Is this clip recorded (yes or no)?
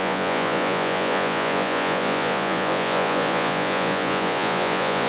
no